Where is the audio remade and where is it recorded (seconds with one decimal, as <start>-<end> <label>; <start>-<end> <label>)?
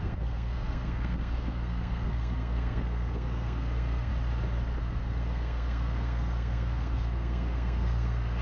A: 0.0-4.1 remade; 4.1-4.8 recorded; 4.8-8.4 remade